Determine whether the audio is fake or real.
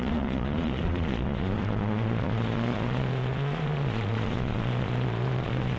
fake